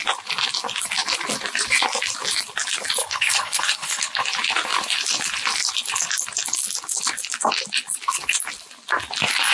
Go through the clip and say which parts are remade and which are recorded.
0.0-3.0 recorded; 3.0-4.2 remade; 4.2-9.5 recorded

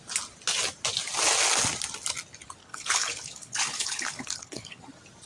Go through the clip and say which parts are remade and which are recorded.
0.0-2.6 recorded; 2.6-4.8 remade; 4.8-5.3 recorded

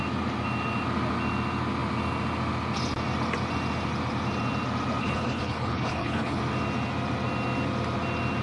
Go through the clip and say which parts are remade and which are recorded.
0.0-5.0 recorded; 5.0-6.4 remade; 6.4-8.4 recorded